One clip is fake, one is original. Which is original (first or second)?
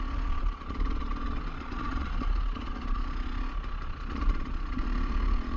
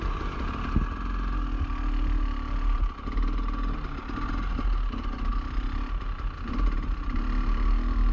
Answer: second